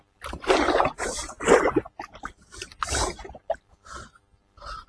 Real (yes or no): yes